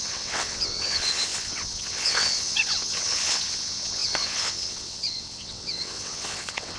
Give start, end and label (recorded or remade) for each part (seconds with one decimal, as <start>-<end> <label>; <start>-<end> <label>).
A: 0.0-6.8 remade